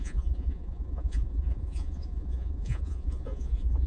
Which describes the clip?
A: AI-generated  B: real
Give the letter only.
A